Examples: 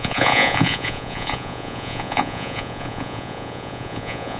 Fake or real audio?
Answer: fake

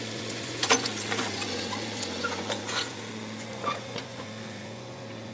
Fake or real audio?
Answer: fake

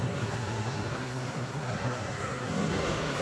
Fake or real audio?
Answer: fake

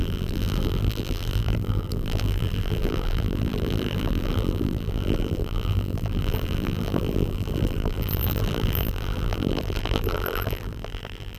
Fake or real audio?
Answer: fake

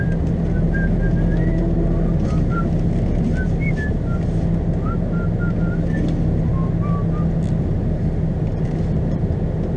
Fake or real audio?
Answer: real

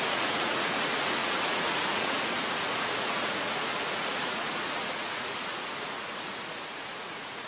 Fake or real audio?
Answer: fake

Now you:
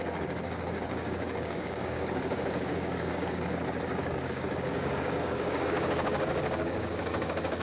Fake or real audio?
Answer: fake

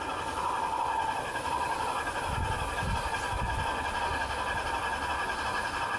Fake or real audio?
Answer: real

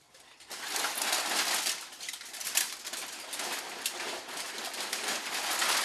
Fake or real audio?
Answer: real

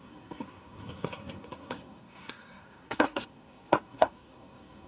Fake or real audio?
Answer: fake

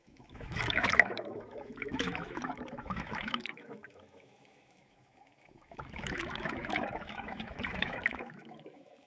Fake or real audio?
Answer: fake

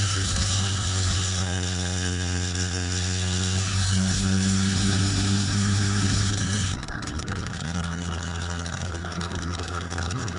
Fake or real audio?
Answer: fake